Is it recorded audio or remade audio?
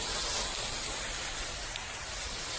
recorded